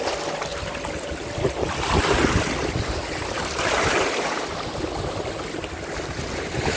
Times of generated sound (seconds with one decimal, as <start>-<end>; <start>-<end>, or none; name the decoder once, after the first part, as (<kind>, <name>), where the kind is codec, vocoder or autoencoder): none